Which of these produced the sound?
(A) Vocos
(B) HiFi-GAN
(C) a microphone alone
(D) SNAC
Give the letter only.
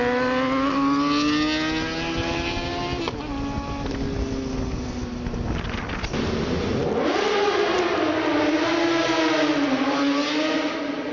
C